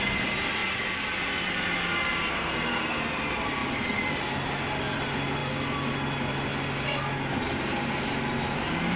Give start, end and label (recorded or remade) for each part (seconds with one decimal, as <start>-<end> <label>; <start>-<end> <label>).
0.0-2.3 recorded; 2.3-3.0 remade; 3.0-9.0 recorded